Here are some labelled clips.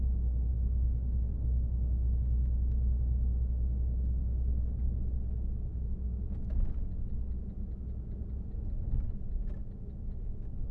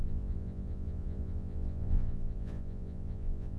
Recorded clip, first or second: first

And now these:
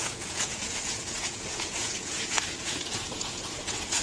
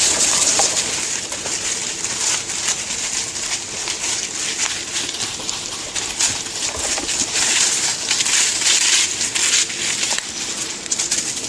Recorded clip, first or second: second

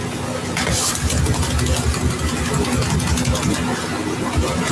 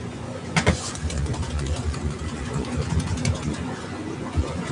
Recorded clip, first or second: first